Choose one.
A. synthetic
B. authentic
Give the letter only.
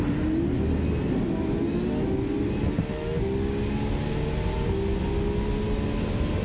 B